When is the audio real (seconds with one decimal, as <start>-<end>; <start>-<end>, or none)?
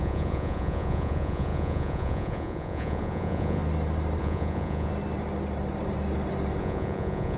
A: 3.6-4.2; 4.9-6.6